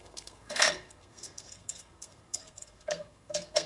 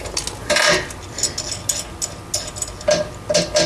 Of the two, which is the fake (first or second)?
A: first